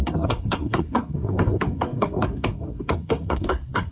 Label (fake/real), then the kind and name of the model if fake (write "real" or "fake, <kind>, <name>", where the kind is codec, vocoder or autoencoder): fake, codec, SNAC